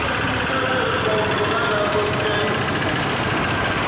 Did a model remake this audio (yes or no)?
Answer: no